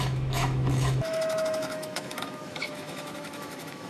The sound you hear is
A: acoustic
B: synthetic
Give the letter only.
B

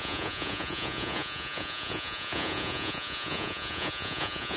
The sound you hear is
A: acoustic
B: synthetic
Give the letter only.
B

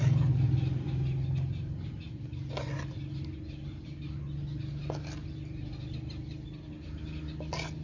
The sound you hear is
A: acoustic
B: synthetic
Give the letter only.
A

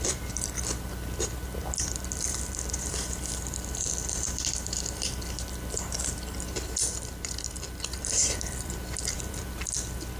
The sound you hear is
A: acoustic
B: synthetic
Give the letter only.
B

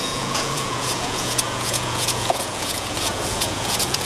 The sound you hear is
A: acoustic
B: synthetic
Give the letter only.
B